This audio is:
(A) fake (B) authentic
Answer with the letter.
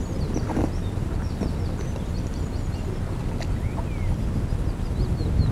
B